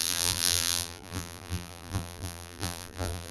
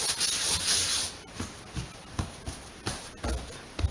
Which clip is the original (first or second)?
second